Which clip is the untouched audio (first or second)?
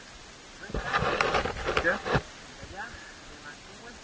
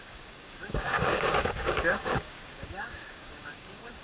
first